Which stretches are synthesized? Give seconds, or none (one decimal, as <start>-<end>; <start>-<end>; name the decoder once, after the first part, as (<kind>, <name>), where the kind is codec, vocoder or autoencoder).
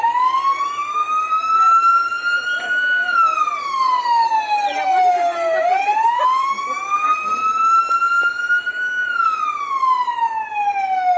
none